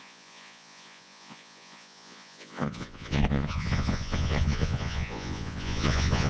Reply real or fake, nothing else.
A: fake